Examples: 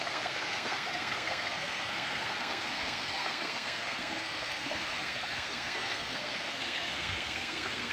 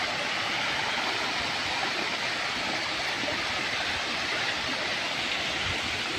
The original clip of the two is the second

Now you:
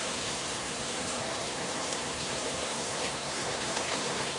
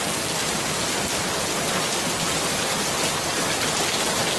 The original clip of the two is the second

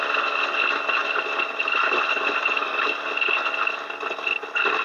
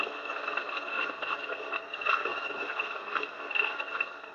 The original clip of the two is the first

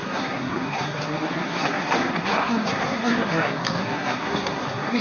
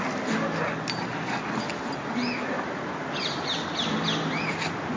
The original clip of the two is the second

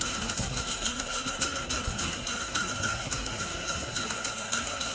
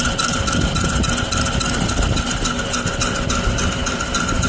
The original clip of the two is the second